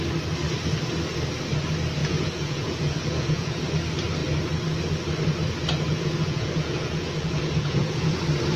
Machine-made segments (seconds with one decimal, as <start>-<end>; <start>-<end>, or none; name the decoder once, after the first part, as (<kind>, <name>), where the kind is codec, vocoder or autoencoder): 2.0-3.6 (vocoder, Vocos); 5.9-8.2

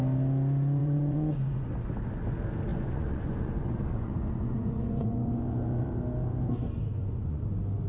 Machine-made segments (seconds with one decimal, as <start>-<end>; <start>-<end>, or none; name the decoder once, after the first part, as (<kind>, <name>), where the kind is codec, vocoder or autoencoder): 0.8-1.7 (vocoder, Vocos); 2.7-5.9; 6.9-7.4

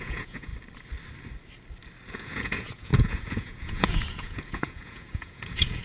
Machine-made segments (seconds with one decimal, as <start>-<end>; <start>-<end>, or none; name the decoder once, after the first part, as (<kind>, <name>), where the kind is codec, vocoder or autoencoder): 0.0-0.5 (vocoder, Vocos); 2.1-5.8

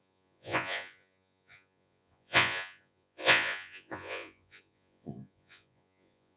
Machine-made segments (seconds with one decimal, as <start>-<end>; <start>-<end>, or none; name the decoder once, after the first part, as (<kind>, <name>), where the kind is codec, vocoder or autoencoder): 0.0-6.4 (vocoder, Vocos)

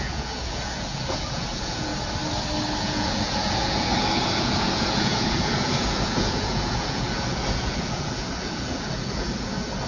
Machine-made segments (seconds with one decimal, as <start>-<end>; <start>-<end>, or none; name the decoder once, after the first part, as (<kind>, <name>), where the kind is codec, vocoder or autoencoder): 0.0-1.9 (vocoder, Vocos); 2.8-9.9